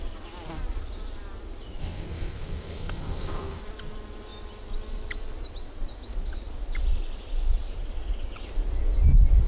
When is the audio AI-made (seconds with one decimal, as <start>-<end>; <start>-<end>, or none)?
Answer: 1.8-3.6